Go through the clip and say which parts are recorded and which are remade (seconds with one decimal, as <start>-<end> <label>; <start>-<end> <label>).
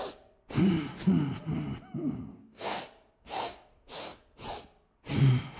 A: 0.0-2.3 recorded; 2.3-2.8 remade; 2.8-3.2 recorded; 3.2-4.2 remade; 4.2-5.6 recorded